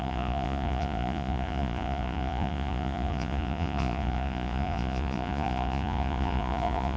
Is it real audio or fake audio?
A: fake